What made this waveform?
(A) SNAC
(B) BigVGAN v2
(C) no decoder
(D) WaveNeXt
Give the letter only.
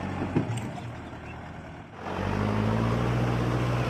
C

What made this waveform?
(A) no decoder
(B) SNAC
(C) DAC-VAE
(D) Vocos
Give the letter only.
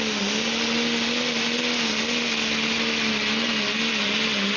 A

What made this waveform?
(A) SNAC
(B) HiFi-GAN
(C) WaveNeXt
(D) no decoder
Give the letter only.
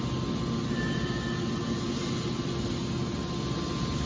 D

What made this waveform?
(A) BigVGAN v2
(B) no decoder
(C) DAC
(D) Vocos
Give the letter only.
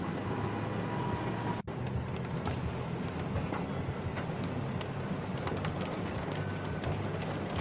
B